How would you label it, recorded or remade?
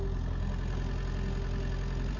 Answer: recorded